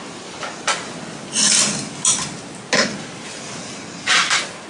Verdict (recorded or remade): recorded